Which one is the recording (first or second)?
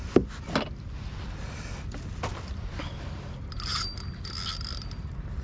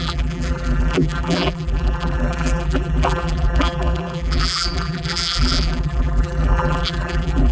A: first